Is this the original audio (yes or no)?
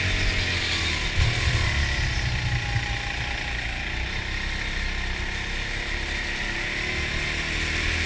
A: yes